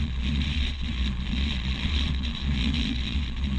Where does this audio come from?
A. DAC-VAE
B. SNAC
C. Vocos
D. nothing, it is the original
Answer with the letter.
C